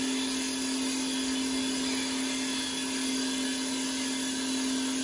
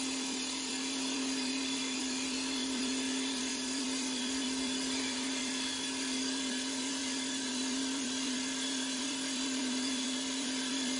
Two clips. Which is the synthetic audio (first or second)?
second